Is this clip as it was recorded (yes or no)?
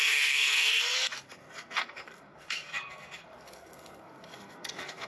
no